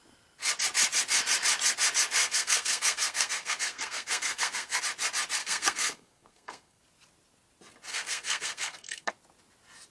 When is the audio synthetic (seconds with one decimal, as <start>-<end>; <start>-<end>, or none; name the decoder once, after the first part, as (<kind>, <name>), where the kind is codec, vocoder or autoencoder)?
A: 2.2-4.8 (codec, SNAC); 5.4-6.8; 7.9-9.1